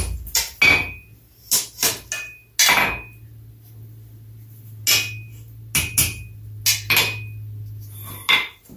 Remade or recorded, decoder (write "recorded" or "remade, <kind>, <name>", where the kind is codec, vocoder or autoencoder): recorded